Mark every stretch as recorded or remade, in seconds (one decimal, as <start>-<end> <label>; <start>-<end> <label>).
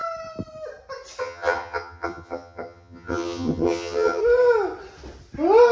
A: 0.0-1.2 recorded; 1.2-4.2 remade; 4.2-5.7 recorded